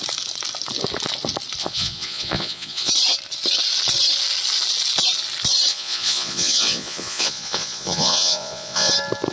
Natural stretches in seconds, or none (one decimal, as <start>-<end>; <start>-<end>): 0.0-1.6; 2.9-5.7; 8.9-9.3